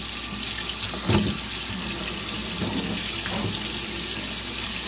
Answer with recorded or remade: recorded